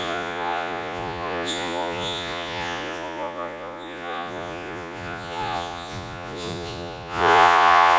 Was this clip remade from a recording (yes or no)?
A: yes